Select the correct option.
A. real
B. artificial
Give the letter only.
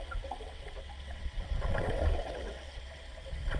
B